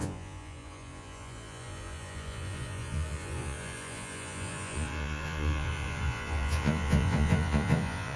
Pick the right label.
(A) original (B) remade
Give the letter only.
B